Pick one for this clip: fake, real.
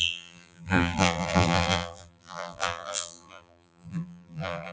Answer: fake